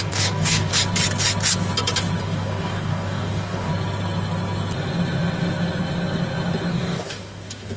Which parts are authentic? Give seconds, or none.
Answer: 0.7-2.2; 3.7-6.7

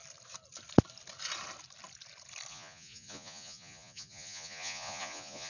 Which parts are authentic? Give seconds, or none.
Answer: 0.0-2.5

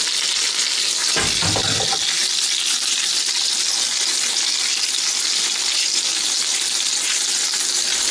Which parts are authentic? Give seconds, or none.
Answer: 0.0-1.0; 1.6-2.2; 5.9-8.1

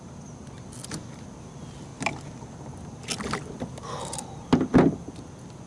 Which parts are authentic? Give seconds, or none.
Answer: 0.0-5.7

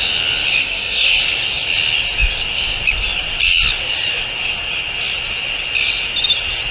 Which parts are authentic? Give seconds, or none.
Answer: 0.0-0.6; 1.2-6.7

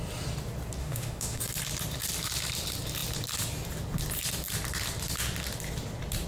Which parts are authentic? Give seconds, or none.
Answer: 0.0-0.8; 1.4-6.3